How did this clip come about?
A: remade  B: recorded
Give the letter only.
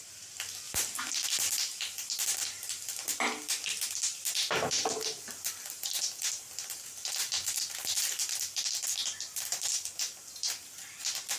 A